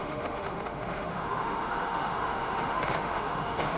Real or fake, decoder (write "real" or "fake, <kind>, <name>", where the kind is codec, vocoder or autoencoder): fake, autoencoder, DAC-VAE